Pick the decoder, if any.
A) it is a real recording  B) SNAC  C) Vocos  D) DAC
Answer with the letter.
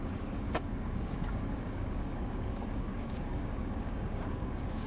D